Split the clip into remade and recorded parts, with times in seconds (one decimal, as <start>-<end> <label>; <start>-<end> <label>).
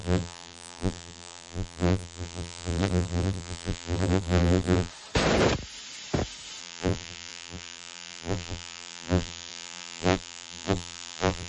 0.0-4.9 remade; 4.9-6.6 recorded; 6.6-11.5 remade